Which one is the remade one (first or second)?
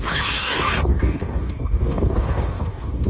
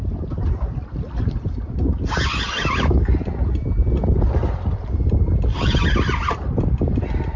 first